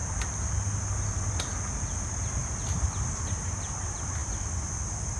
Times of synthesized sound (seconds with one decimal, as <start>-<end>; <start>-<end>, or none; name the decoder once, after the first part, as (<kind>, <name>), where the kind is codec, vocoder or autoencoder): none